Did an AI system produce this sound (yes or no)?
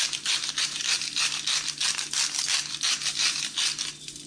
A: no